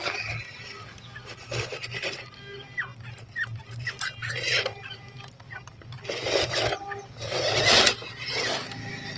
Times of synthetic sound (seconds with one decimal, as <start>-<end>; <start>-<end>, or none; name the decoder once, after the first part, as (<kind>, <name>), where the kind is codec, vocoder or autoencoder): none